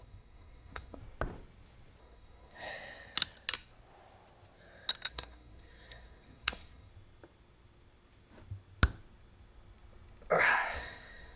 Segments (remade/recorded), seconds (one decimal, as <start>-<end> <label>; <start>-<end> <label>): 0.0-1.0 remade; 1.0-2.0 recorded; 2.0-2.7 remade; 2.7-5.1 recorded; 5.1-6.9 remade; 6.9-10.4 recorded; 10.4-11.4 remade